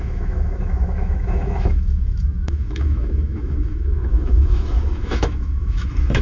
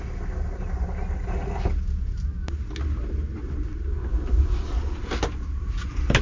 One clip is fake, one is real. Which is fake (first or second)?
first